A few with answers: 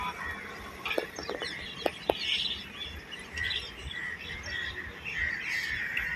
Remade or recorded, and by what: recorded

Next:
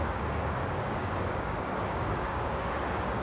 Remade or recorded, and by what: remade, codec, DAC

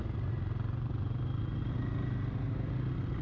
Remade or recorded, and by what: recorded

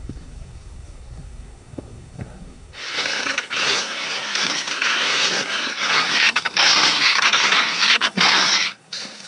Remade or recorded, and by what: remade, codec, SNAC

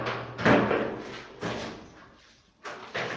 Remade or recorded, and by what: recorded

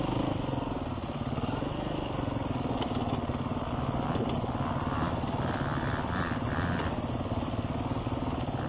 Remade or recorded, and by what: recorded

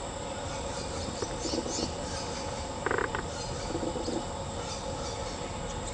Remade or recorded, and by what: recorded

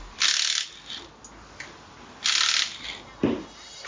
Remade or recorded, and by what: recorded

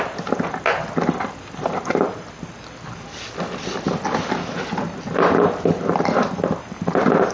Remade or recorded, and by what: recorded